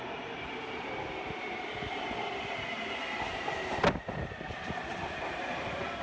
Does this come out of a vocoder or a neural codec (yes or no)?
no